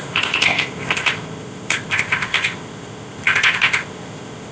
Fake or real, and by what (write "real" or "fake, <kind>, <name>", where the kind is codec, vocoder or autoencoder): fake, codec, ZipCodec